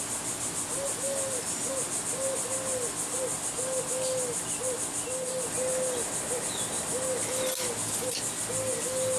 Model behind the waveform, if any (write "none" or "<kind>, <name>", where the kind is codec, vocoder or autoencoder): none